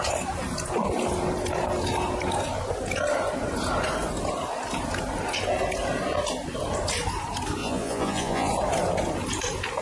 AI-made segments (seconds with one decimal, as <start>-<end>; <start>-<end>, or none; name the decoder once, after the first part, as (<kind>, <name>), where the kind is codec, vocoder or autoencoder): 7.6-8.5 (vocoder, Vocos)